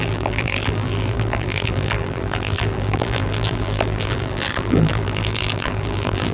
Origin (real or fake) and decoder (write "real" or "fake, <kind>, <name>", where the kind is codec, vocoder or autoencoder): fake, vocoder, BigVGAN v2